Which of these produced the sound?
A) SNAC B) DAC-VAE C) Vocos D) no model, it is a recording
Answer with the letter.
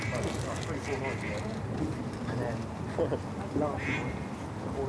D